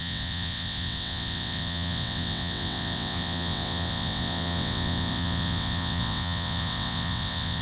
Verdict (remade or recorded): remade